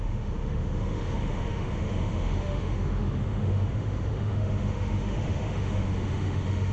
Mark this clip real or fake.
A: fake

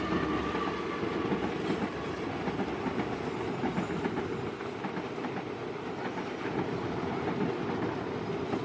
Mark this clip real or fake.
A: real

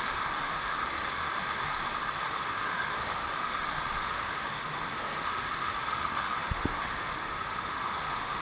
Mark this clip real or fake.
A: fake